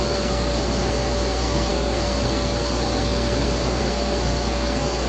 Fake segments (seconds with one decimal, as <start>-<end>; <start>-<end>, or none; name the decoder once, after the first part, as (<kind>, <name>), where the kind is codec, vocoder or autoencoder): 0.0-5.1 (codec, SNAC)